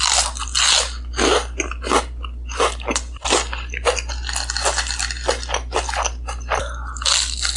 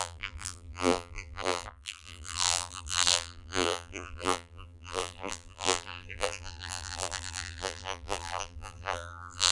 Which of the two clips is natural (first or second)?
first